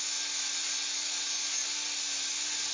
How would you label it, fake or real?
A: real